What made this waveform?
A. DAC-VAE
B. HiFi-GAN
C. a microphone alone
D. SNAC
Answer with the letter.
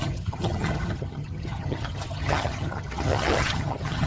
B